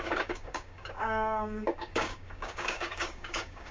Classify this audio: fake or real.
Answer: fake